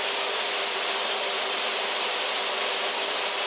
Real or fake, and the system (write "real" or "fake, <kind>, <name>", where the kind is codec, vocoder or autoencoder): real